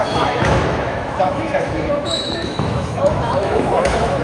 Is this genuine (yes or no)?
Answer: no